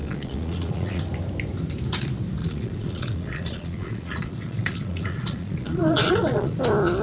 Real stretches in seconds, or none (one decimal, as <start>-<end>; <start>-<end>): 1.0-2.4; 6.6-7.0